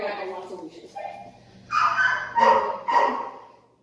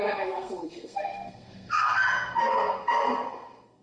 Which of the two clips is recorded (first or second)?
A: first